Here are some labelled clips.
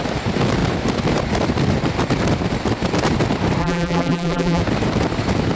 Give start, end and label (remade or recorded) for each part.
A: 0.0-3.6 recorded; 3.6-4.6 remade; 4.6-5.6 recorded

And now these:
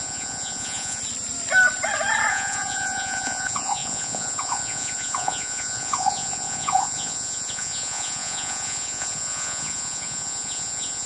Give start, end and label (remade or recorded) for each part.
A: 0.0-1.0 remade; 1.0-2.3 recorded; 2.3-11.1 remade